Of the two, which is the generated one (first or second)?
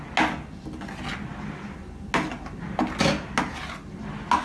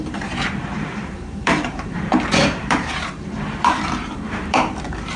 second